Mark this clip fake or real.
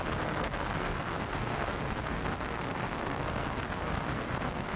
fake